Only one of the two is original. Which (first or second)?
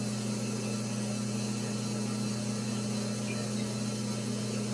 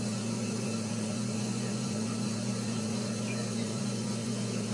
first